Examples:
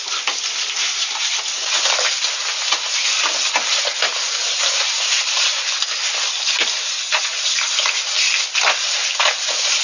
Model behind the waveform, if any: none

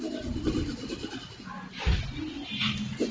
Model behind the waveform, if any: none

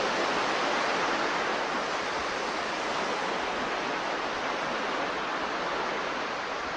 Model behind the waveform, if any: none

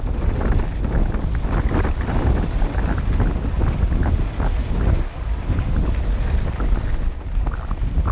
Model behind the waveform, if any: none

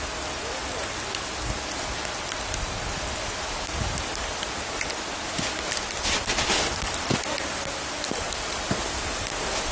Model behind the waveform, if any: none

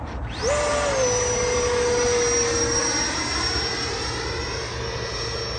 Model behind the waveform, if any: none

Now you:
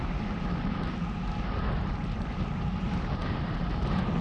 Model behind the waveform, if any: none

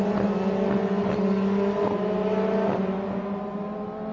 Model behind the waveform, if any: none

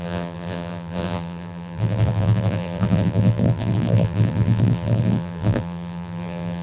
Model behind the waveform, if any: vocoder, BigVGAN v2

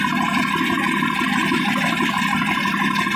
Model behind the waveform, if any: none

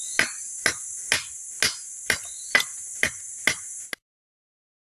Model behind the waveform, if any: none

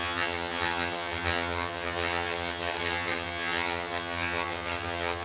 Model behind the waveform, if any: vocoder, HiFi-GAN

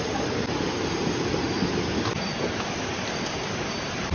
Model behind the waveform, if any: none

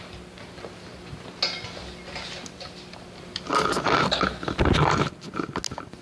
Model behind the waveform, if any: none